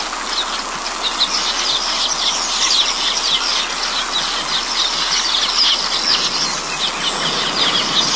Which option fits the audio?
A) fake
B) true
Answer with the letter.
B